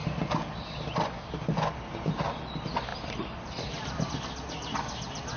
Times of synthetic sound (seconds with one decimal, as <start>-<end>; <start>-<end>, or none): 2.9-4.1